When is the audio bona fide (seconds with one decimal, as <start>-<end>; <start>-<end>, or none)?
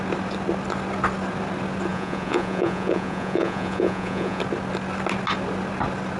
0.0-1.9; 4.4-6.2